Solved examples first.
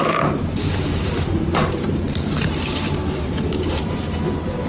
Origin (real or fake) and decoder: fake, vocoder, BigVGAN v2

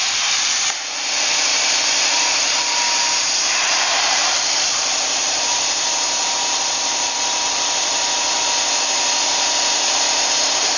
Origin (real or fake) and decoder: fake, vocoder, BigVGAN v2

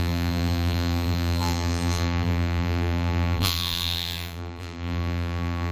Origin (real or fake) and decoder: fake, vocoder, BigVGAN v2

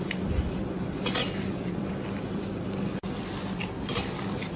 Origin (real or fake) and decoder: fake, vocoder, BigVGAN v2